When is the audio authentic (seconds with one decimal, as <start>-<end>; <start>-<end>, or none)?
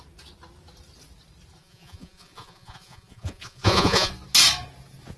0.0-1.6; 4.1-5.2